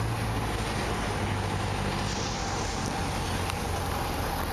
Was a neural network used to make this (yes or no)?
no